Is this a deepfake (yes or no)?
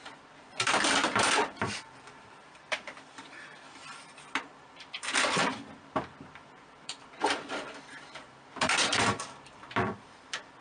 yes